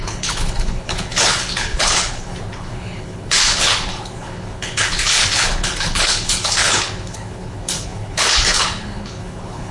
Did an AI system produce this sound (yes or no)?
yes